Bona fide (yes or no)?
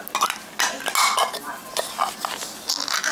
yes